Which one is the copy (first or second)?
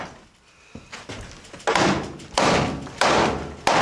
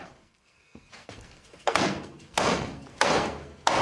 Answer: second